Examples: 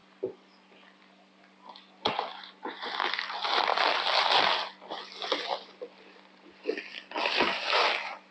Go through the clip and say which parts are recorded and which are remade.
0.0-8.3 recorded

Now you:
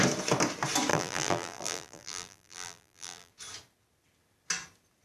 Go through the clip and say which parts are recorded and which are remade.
0.0-0.9 recorded; 0.9-3.3 remade; 3.3-5.0 recorded